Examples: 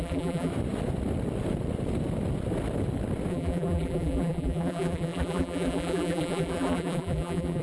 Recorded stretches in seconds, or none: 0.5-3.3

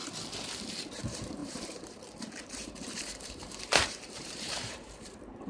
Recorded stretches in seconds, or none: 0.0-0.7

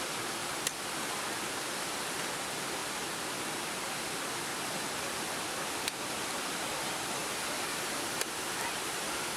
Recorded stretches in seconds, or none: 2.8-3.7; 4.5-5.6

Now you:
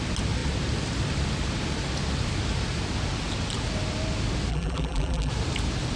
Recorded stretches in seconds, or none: 0.0-4.5; 5.3-6.0

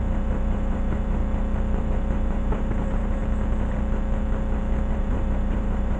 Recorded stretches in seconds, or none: 1.2-1.8; 3.2-4.9

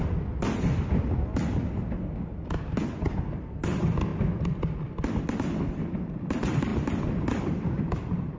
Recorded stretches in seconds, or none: 0.0-8.4